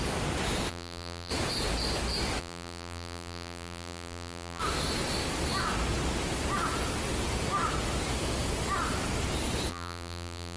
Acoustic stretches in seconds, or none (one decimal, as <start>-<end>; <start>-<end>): 0.0-0.7; 1.3-2.4; 4.6-9.7